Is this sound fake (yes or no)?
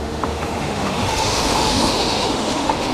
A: yes